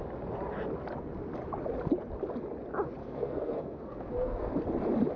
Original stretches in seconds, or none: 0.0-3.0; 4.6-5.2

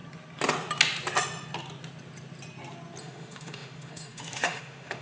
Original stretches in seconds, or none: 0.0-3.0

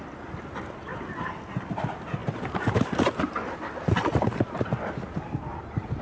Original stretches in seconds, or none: 0.0-6.0

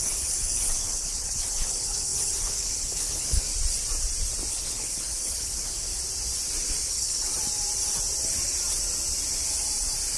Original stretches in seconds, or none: 3.5-4.5; 5.9-6.8; 7.3-10.2